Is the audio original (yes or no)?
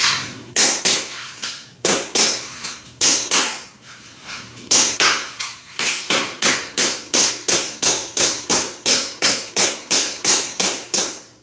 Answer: no